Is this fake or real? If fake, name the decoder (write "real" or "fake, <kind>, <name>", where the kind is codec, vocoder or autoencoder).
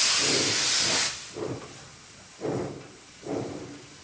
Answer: real